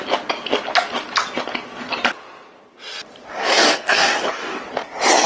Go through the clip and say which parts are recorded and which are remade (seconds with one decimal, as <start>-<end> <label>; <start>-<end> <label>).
0.0-3.3 recorded; 3.3-4.6 remade; 4.6-5.3 recorded